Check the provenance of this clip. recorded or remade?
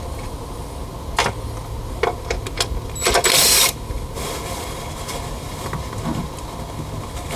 recorded